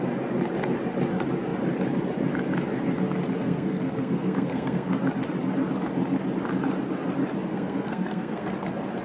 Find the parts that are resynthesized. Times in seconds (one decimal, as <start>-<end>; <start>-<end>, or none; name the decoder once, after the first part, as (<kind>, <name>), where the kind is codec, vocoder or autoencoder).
3.4-4.9 (codec, SNAC); 7.5-8.5